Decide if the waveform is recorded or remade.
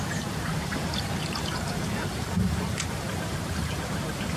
remade